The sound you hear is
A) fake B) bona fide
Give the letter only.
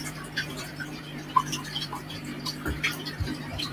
A